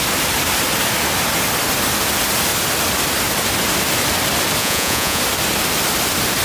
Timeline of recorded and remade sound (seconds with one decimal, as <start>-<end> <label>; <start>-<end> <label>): 0.0-4.6 recorded; 4.6-5.2 remade; 5.2-6.4 recorded